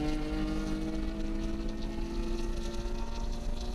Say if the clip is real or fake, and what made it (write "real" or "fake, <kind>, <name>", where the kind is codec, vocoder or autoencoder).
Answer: real